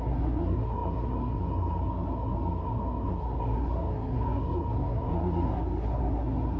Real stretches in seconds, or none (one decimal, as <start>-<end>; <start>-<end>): none